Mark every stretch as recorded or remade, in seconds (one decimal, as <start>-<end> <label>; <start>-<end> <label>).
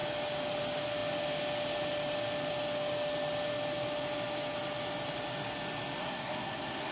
0.0-6.0 recorded; 6.0-6.9 remade